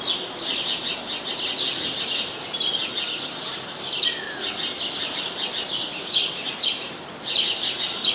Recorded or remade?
recorded